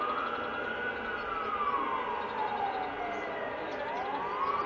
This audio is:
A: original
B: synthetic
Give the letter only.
A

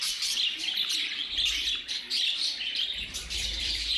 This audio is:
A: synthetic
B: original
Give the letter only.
A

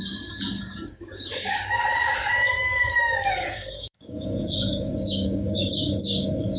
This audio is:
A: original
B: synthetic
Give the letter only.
B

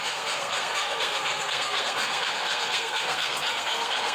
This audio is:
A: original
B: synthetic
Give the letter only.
B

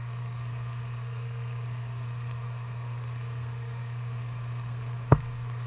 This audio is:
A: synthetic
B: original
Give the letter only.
A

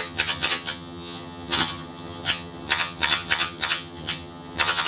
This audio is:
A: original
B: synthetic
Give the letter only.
B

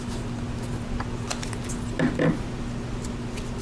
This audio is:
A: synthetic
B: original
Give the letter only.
B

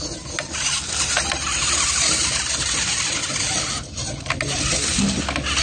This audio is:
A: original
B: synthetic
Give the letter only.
A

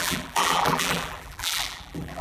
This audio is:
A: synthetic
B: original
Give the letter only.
A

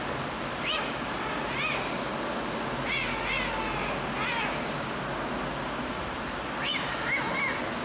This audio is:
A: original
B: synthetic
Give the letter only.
A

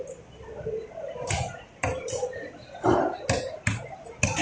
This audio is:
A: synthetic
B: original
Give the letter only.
B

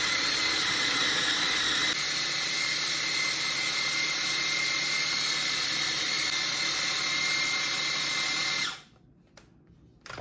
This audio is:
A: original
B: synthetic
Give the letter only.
A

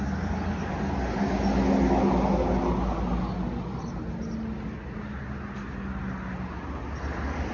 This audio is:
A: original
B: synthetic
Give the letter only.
A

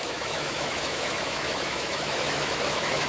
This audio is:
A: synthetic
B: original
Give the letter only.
A